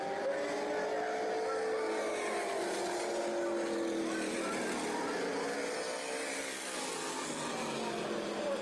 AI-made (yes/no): no